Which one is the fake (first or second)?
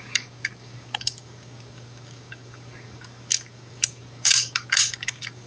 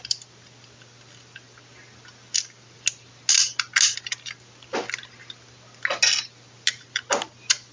first